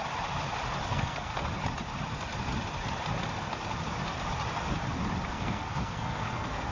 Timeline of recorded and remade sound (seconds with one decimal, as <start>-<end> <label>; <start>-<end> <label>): 0.0-0.9 recorded; 0.9-1.3 remade; 1.3-5.3 recorded; 5.3-6.7 remade